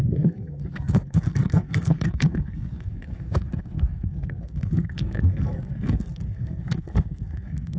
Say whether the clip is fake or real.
fake